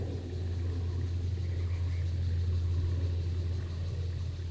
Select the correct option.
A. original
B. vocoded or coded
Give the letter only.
A